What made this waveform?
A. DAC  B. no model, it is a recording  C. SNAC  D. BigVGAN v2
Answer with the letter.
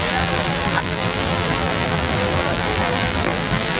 D